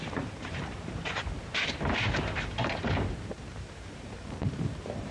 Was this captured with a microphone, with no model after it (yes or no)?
no